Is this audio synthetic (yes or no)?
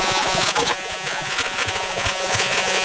yes